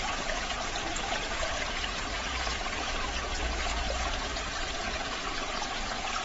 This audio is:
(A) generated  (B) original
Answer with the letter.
A